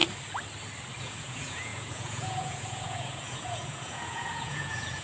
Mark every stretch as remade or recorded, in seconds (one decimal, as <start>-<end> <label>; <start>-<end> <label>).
0.0-1.0 recorded; 1.0-5.0 remade

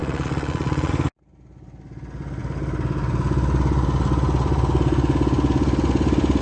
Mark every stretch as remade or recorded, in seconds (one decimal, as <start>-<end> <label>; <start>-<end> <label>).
0.0-0.9 remade; 0.9-6.4 recorded